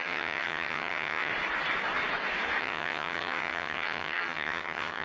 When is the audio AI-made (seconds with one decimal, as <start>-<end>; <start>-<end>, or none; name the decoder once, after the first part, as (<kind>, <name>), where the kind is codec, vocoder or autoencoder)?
0.0-1.3 (vocoder, HiFi-GAN); 2.6-5.0